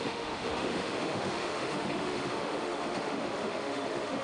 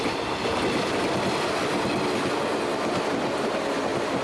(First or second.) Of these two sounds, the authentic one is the second